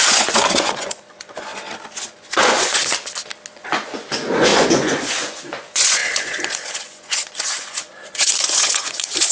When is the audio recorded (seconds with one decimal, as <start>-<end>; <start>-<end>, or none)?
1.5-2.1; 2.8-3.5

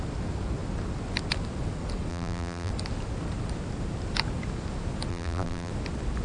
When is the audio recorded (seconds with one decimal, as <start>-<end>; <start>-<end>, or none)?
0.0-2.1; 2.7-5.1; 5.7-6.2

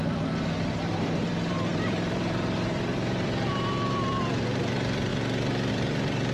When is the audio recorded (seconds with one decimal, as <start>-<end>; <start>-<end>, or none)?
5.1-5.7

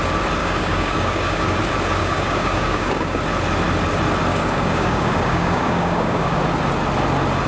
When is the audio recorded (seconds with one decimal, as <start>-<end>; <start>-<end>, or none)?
0.0-0.4; 1.6-2.0; 3.2-4.3; 6.4-7.5

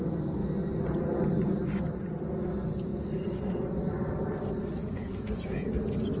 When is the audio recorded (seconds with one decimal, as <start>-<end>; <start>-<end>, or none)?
0.0-4.8; 5.7-6.2

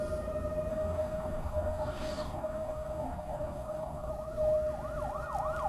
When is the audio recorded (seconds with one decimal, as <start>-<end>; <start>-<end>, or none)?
0.0-0.7; 4.1-5.7